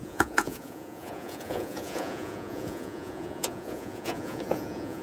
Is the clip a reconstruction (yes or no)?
yes